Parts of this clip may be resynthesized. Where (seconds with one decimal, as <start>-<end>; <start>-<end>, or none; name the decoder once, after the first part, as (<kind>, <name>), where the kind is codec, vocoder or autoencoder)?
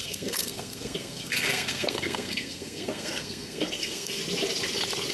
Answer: 0.0-4.2 (codec, SNAC)